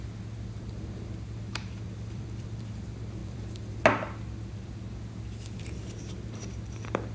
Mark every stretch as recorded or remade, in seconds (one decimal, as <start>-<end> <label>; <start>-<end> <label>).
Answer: 0.0-1.5 recorded; 1.5-2.6 remade; 2.6-3.2 recorded; 3.2-3.8 remade; 3.8-7.1 recorded